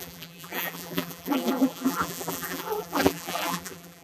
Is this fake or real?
fake